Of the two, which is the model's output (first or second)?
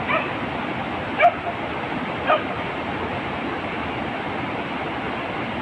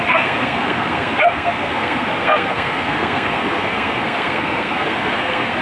second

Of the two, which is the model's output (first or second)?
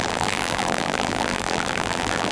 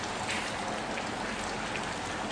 first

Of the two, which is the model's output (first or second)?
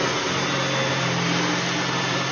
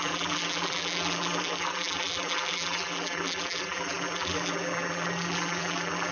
second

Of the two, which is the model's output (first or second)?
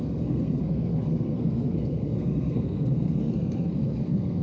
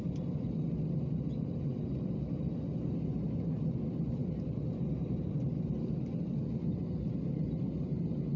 first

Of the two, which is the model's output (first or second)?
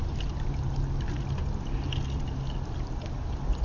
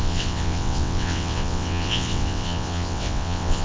second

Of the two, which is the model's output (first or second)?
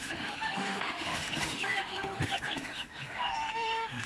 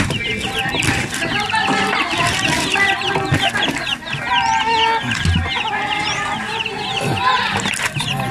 first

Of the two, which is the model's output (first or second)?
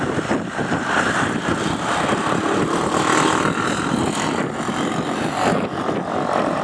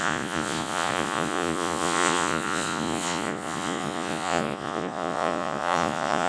second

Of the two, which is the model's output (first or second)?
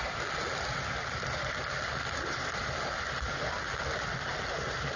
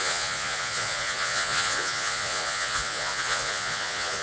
second